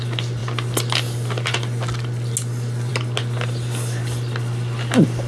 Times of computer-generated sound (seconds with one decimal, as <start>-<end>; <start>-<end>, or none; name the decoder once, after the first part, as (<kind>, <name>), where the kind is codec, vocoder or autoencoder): none